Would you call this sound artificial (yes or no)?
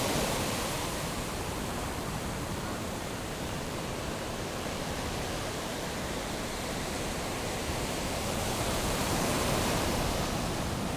yes